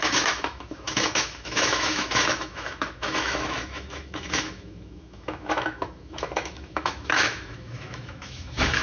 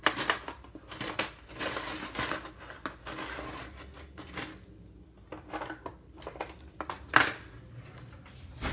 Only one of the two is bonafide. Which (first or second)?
second